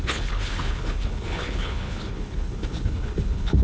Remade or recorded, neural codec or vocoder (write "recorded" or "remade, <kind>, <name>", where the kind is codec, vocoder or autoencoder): remade, codec, HILCodec